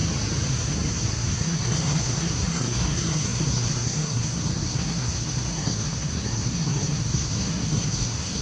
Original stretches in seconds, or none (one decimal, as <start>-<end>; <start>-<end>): 0.0-0.5